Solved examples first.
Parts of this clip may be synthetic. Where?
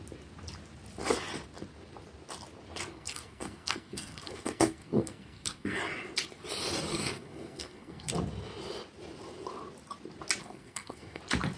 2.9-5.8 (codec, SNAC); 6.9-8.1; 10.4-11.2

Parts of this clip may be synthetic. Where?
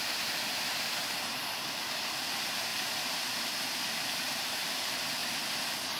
0.0-5.2 (vocoder, BigVGAN v2)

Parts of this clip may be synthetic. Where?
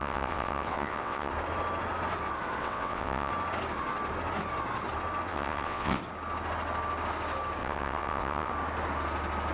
0.0-1.3 (vocoder, WaveNeXt); 2.6-3.3; 5.3-6.0; 7.6-8.5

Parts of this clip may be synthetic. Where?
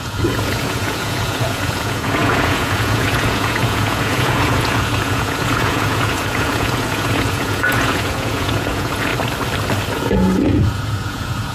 0.0-9.1 (vocoder, Vocos); 9.9-11.5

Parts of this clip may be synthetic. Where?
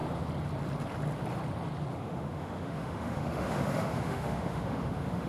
1.9-5.3 (autoencoder, DAC-VAE)